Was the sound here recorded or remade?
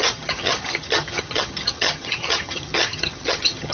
remade